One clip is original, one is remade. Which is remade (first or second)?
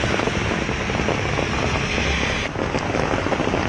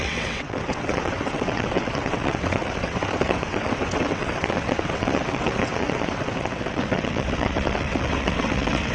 second